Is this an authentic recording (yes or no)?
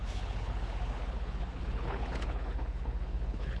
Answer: no